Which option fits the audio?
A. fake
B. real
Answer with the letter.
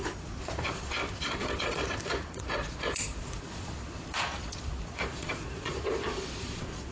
A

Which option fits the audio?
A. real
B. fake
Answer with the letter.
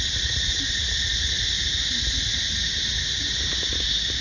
A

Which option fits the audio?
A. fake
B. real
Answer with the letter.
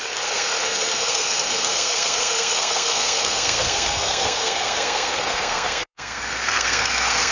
A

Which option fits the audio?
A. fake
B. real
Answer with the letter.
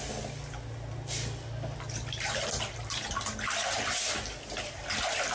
B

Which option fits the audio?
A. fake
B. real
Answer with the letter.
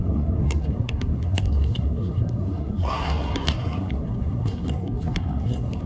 A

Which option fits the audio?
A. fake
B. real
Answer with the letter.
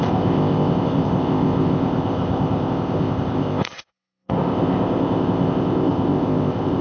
A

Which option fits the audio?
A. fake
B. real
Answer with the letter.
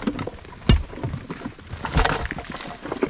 B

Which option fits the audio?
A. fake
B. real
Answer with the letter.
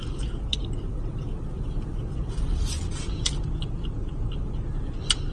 B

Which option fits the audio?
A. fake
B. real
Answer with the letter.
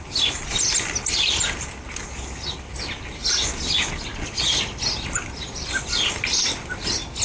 B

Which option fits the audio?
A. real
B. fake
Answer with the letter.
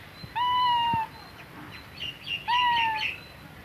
A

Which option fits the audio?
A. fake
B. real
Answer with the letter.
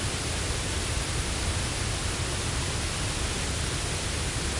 B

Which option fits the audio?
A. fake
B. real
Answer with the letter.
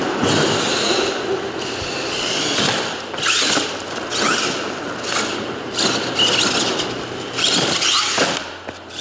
B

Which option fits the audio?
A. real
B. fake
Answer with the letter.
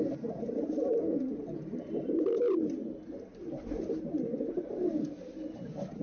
B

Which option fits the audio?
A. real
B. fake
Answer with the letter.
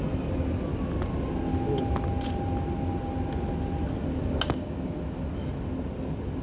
A